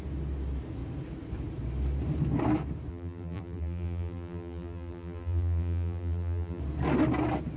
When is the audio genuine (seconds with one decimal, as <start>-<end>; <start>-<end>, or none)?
0.0-2.9; 6.6-7.6